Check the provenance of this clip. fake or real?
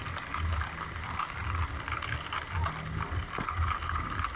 real